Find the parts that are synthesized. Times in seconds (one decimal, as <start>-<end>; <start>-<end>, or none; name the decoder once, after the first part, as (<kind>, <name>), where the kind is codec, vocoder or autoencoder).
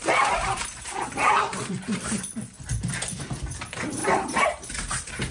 0.0-2.3 (vocoder, BigVGAN v2); 4.0-5.3